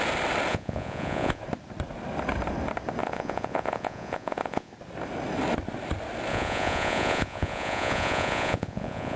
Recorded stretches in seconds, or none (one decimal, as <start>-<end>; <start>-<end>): 0.0-0.5; 1.4-3.0; 4.7-6.3

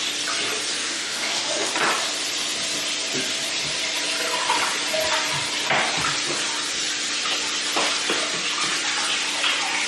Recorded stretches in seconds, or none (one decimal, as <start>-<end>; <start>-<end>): 0.0-0.8; 1.7-9.9